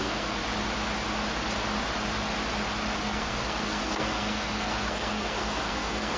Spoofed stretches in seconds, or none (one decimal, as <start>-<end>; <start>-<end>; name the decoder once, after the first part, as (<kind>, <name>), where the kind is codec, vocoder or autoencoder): 0.0-0.4 (codec, SNAC); 3.0-6.2